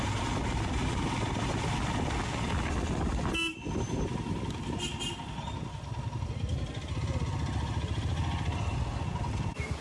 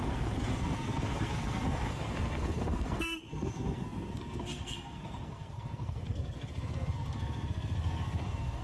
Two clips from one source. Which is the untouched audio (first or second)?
first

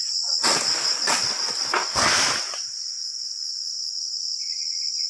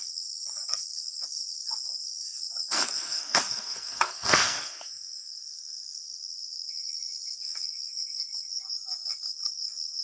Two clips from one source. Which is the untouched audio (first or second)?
first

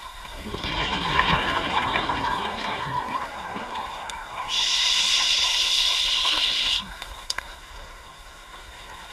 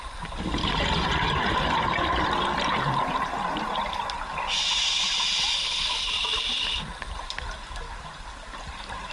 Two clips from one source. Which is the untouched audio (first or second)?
second